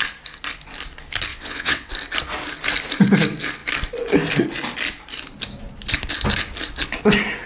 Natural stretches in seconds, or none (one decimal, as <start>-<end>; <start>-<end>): 0.0-1.3; 1.9-7.5